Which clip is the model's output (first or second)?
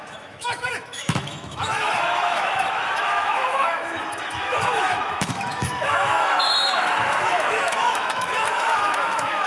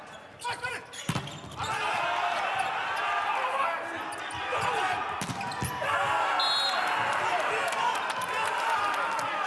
first